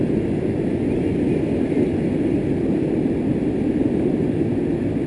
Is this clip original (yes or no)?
yes